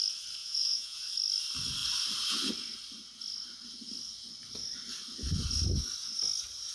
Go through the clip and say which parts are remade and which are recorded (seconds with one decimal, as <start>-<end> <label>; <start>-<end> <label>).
0.0-0.4 recorded; 0.4-1.0 remade; 1.0-6.7 recorded